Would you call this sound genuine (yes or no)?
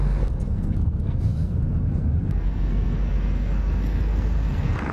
no